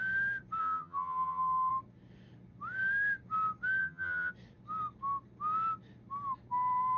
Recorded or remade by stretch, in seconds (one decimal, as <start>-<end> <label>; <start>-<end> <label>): 0.0-0.6 recorded; 0.6-1.7 remade; 1.7-3.8 recorded; 3.8-4.3 remade; 4.3-7.0 recorded